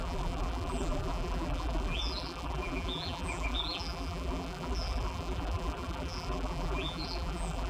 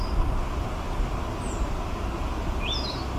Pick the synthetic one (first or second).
first